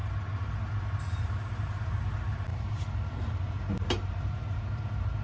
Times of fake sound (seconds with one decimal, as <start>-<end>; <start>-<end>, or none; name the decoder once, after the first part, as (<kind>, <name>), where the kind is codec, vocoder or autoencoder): 2.5-4.6 (vocoder, BigVGAN v2)